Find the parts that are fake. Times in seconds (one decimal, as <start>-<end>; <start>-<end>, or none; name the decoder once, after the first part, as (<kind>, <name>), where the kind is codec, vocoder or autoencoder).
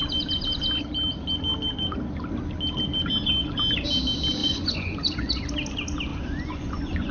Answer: 4.4-5.5 (vocoder, Vocos); 6.1-7.1